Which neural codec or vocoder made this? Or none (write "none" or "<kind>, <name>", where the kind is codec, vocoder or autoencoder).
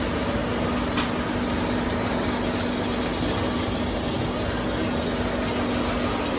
none